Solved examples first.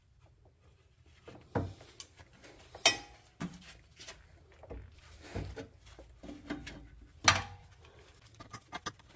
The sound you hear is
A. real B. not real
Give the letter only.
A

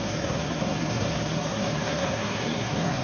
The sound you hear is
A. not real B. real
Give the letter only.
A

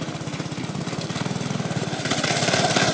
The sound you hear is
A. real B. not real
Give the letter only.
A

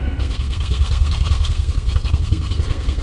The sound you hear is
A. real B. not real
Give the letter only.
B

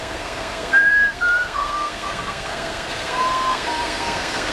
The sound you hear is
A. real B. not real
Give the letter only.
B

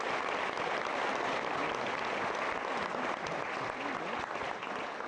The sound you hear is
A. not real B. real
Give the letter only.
B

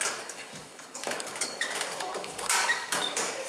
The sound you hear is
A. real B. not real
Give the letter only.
B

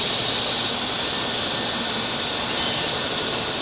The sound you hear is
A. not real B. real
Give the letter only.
B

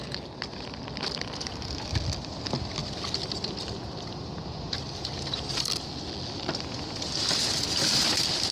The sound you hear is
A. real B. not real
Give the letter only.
A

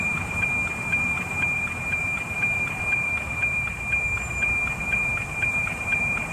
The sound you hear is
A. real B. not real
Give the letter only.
B